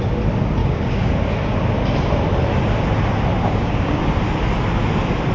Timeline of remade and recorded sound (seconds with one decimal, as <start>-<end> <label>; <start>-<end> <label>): 0.0-0.6 recorded; 0.6-1.1 remade; 1.1-3.4 recorded; 3.4-4.0 remade; 4.0-5.3 recorded